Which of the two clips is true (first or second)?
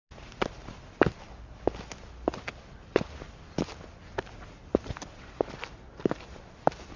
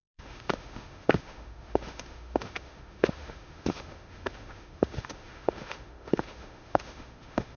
first